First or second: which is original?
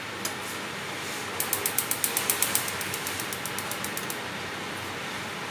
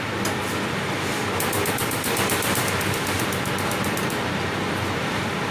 first